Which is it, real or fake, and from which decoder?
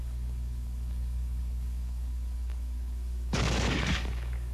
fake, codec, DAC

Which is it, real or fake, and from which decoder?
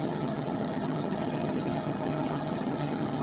fake, vocoder, HiFi-GAN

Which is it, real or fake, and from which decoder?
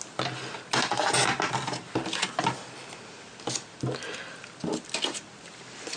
real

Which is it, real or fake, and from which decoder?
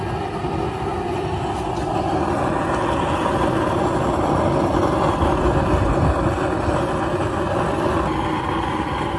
real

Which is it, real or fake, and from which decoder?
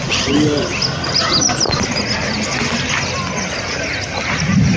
real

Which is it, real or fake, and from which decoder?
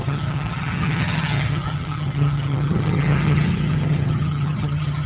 fake, vocoder, HiFi-GAN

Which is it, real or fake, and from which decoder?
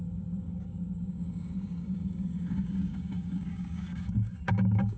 fake, codec, DAC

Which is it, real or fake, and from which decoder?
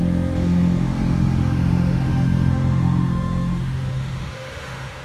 fake, autoencoder, DAC-VAE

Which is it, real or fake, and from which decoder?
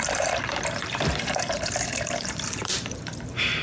fake, vocoder, BigVGAN v2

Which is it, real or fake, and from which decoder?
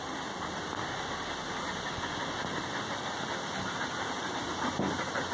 real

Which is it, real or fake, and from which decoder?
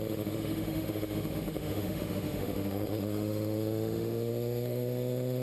fake, autoencoder, DAC-VAE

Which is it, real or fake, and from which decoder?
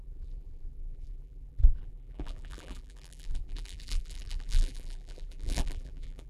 fake, vocoder, BigVGAN v2